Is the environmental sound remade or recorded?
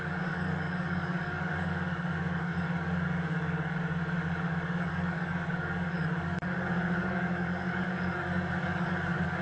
remade